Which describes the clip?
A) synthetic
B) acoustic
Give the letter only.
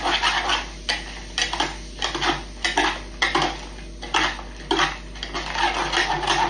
B